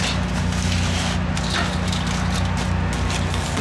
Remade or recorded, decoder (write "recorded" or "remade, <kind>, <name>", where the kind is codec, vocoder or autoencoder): recorded